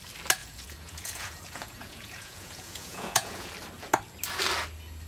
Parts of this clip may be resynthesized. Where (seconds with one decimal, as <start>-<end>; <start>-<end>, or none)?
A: 0.4-3.5